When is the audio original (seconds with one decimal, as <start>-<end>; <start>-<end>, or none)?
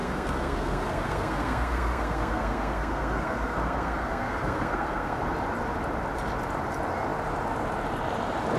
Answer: 5.2-8.6